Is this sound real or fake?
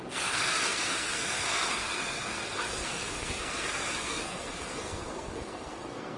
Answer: fake